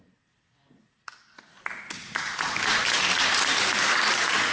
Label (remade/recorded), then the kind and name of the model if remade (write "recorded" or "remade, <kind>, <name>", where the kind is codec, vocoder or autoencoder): recorded